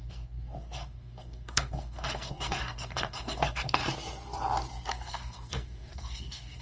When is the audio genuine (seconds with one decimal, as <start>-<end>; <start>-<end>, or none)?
3.8-4.9